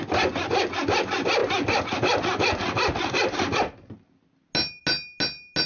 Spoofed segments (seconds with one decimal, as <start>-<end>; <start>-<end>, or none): none